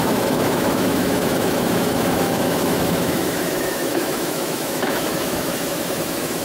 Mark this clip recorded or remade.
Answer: remade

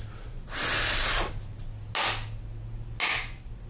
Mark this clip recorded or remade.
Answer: recorded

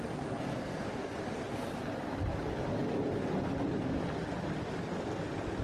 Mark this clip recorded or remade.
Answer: recorded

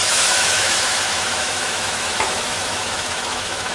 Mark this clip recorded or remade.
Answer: remade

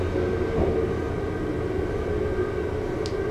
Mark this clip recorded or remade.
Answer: recorded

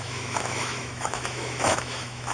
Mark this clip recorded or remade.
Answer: remade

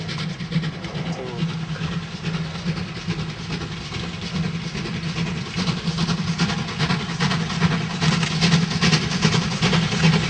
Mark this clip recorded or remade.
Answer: recorded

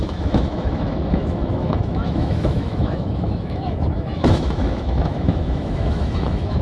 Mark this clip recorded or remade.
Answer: remade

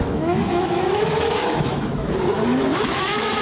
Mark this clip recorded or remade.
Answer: remade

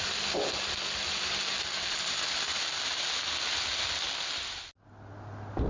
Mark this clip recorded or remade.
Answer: recorded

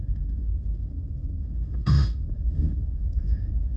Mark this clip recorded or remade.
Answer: remade